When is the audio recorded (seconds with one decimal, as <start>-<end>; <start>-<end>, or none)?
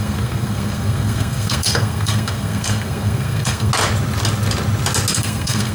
3.7-5.1